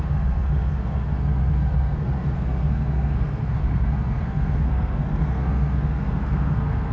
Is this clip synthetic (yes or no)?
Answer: yes